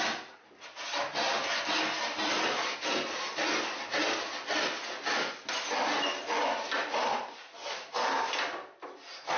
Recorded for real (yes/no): yes